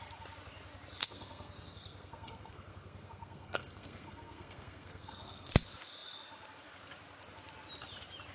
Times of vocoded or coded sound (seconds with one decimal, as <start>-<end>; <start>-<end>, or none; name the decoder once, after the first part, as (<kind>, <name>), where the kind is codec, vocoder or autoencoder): 1.0-5.5 (codec, SNAC)